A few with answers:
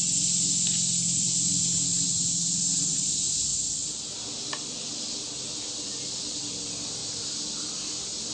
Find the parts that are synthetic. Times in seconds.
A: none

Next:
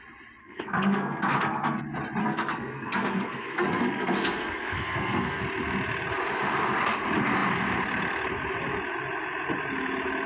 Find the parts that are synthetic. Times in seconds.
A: 0.4-1.8 (codec, SNAC); 2.2-5.4

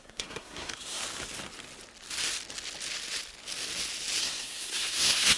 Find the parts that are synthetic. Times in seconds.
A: 0.0-1.0 (codec, SNAC); 4.2-5.4

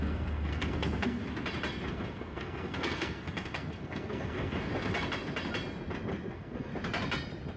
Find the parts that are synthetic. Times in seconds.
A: 0.0-1.2 (codec, SNAC); 1.9-4.7; 6.3-6.7